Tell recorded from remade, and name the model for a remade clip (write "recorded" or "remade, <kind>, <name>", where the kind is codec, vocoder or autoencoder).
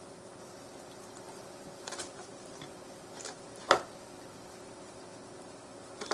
recorded